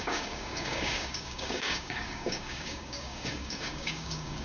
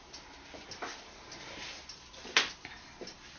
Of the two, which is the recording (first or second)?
second